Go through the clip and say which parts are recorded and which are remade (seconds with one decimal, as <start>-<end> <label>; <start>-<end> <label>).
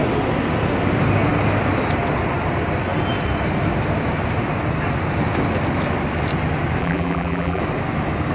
0.0-6.8 recorded; 6.8-7.6 remade; 7.6-8.3 recorded